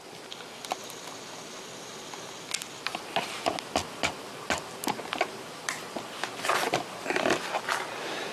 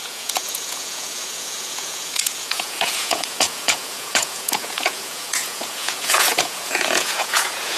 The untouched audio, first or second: first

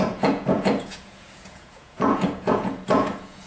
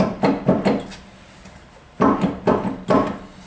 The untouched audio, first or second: second